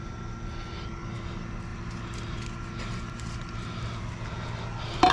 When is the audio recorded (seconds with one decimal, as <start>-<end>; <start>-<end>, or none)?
0.0-5.1